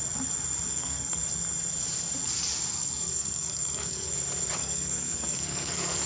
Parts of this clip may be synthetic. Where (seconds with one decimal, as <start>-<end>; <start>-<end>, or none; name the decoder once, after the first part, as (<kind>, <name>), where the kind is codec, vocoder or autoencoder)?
0.7-1.2 (codec, SNAC); 2.7-4.1; 4.6-6.1